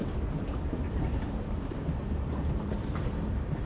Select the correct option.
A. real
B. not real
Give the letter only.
B